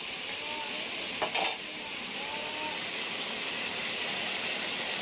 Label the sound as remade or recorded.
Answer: recorded